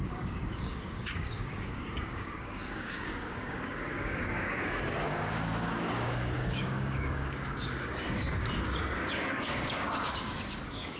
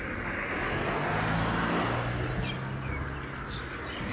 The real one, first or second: second